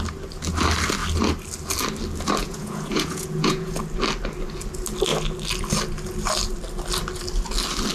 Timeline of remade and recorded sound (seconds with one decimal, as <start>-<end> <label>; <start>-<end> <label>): 0.0-2.4 recorded; 2.4-3.8 remade; 3.8-7.9 recorded